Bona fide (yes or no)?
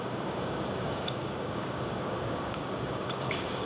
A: no